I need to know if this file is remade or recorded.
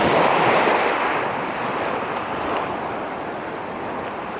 recorded